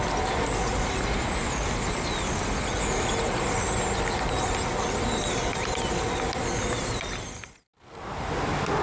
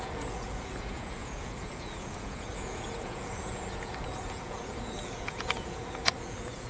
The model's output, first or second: second